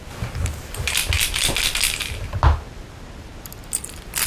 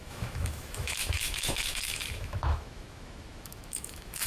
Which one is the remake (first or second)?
second